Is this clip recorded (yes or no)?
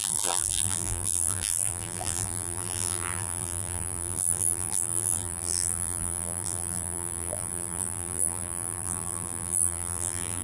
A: no